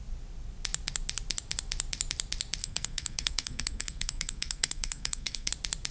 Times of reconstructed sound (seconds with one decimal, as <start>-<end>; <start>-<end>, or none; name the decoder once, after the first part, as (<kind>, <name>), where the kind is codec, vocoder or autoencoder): 2.6-5.5 (codec, SNAC)